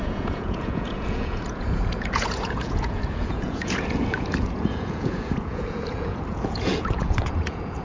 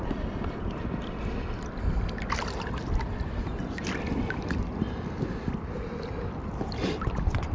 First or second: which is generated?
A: first